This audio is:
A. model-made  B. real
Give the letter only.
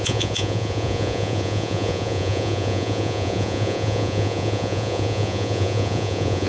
A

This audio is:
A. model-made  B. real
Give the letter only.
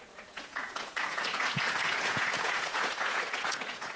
A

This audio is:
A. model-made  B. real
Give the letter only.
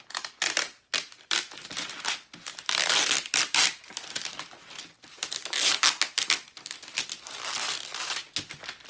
B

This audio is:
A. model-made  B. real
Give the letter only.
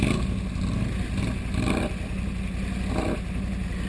B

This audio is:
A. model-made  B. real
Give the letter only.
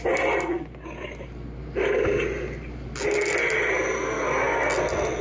B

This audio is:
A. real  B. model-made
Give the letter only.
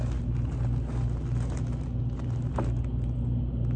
A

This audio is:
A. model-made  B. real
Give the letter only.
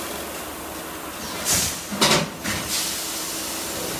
B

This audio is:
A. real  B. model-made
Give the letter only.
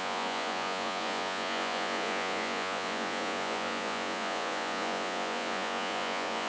B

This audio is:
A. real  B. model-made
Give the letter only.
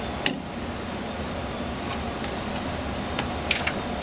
A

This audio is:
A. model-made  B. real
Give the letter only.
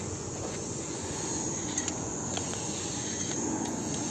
A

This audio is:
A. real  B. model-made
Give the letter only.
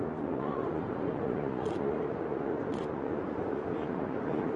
B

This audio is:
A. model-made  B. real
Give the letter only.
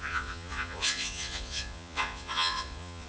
A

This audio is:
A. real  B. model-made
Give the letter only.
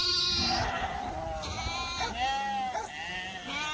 A